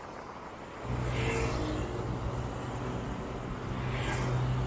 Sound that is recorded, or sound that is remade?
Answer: recorded